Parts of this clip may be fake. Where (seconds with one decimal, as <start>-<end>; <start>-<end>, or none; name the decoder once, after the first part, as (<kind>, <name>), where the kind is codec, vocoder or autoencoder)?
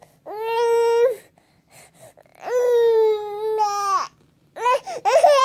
none